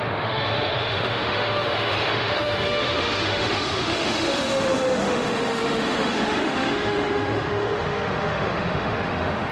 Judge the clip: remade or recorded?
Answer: remade